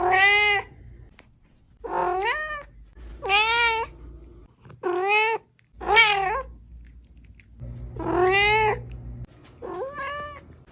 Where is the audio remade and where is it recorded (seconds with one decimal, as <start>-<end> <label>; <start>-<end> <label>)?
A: 0.0-10.7 recorded